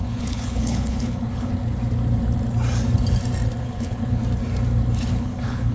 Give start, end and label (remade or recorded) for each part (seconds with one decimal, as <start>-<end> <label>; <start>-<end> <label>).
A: 0.0-1.5 remade; 1.5-3.6 recorded; 3.6-4.2 remade; 4.2-5.1 recorded; 5.1-5.7 remade

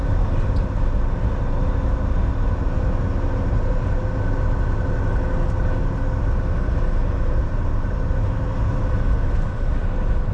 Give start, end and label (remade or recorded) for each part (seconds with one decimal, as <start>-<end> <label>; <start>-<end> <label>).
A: 0.0-7.0 recorded; 7.0-8.8 remade; 8.8-10.3 recorded

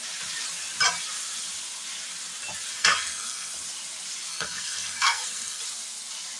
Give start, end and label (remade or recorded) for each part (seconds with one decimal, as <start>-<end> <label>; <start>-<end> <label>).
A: 0.0-2.7 recorded; 2.7-3.5 remade; 3.5-4.3 recorded; 4.3-5.6 remade; 5.6-6.4 recorded

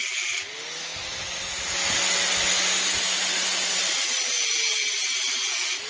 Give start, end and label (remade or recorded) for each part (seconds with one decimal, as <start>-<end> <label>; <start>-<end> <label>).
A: 0.0-5.9 recorded

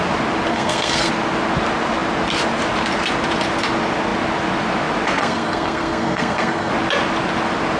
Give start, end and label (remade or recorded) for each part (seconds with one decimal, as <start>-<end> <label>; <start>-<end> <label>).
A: 0.0-0.5 recorded; 0.5-1.1 remade; 1.1-5.2 recorded; 5.2-6.7 remade; 6.7-7.8 recorded